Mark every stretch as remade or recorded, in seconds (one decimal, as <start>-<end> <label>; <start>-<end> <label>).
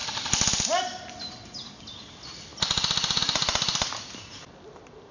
0.0-5.1 recorded